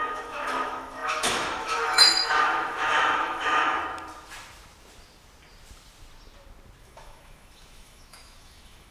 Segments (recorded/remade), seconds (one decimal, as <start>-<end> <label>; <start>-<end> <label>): 0.0-3.8 remade; 3.8-6.8 recorded; 6.8-8.9 remade